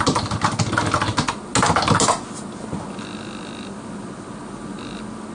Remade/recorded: recorded